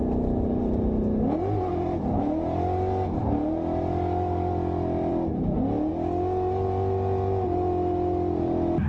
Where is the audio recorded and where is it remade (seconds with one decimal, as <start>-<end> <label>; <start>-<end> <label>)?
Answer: 0.0-8.9 recorded